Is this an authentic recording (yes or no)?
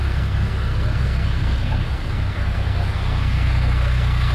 no